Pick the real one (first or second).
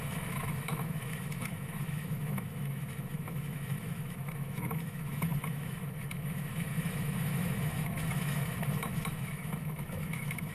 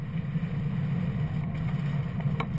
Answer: second